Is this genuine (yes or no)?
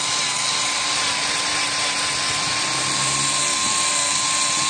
yes